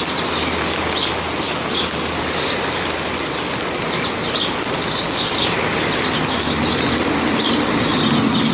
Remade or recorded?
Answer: recorded